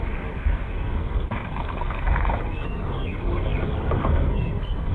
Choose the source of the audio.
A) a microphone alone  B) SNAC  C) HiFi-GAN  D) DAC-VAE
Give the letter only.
B